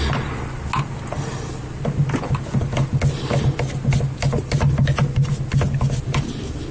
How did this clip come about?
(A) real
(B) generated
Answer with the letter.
A